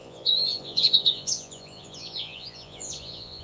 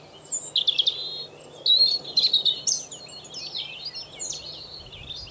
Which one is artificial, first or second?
first